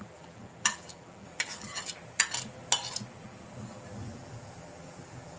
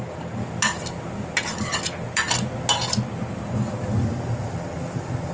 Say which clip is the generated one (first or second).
first